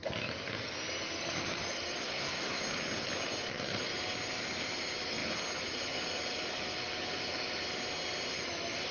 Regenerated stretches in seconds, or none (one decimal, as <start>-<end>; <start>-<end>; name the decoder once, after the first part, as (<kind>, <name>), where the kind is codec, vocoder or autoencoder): 2.0-2.6 (codec, SNAC)